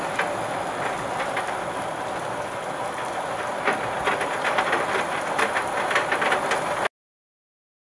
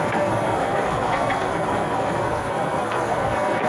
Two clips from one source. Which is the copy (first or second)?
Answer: second